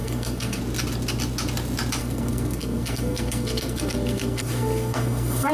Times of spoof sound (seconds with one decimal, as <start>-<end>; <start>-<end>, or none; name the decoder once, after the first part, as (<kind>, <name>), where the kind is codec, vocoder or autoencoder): 0.0-0.6 (codec, SNAC); 2.0-5.5

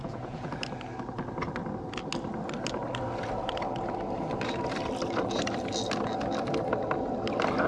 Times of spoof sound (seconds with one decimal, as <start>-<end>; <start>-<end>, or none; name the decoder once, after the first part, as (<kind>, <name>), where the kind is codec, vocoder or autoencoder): 0.0-0.5 (vocoder, Vocos)

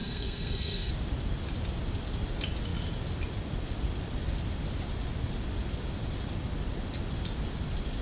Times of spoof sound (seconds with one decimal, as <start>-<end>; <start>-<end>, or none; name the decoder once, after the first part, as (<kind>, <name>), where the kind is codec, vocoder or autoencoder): 0.0-0.9 (codec, SNAC)

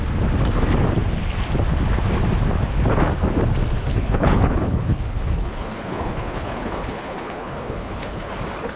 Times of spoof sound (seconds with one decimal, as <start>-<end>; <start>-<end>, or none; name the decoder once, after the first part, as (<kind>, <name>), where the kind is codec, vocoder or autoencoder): 3.9-8.3 (codec, HILCodec)

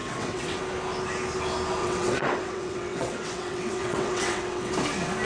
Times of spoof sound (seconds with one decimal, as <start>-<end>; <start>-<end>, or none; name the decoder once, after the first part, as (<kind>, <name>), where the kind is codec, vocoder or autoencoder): 0.0-0.6 (vocoder, WaveNeXt); 1.8-4.7

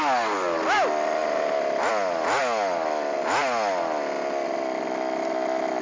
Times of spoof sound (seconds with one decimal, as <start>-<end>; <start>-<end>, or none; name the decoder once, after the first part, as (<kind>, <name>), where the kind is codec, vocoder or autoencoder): none

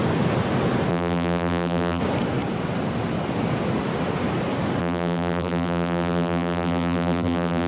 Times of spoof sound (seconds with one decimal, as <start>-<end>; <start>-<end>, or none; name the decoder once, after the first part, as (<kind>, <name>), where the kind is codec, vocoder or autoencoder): 0.9-2.0 (vocoder, BigVGAN v2); 4.8-7.7